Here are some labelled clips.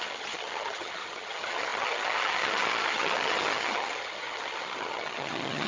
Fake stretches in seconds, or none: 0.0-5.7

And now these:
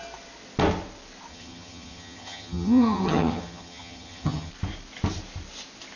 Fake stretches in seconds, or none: 1.3-4.5

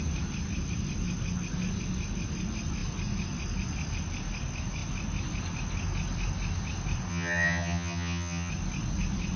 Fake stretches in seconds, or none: 7.1-8.5

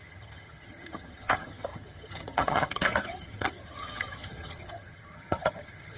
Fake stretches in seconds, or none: 0.0-6.0

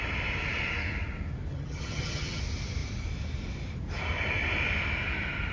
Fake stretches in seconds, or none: 1.5-2.4

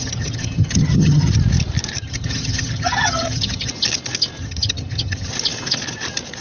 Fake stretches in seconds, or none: 0.0-1.3; 2.0-3.7; 4.4-5.3